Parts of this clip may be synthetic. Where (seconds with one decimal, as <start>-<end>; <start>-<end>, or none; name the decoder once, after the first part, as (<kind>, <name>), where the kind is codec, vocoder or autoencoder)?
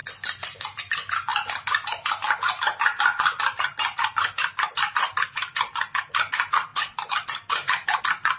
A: 0.0-0.8 (vocoder, BigVGAN v2); 6.7-8.0